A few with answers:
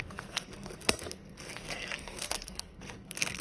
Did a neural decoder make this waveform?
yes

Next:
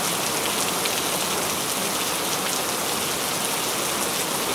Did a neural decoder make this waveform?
no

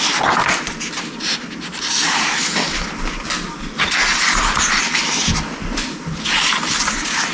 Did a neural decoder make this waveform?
no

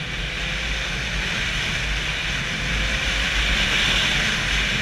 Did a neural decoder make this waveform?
no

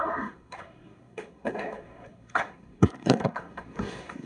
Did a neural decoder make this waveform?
yes